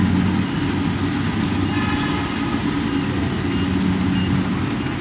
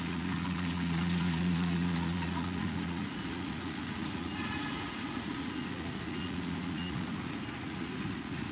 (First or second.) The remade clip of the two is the second